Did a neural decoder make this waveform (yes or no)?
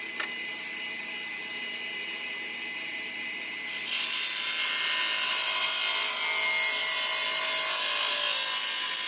no